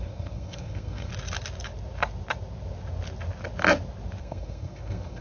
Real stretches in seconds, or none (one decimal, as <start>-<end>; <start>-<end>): 1.1-4.2